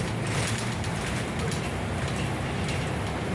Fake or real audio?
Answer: fake